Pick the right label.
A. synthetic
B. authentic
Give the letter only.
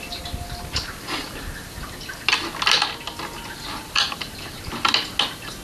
B